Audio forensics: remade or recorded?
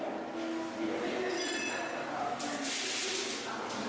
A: recorded